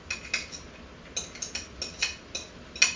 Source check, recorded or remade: recorded